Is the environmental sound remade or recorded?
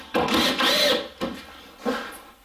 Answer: recorded